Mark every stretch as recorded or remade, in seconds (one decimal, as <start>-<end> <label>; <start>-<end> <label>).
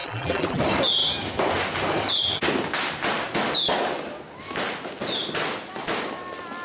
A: 0.0-0.6 remade; 0.6-6.6 recorded